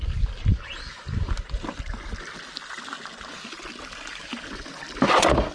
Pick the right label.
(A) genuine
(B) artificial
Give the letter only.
A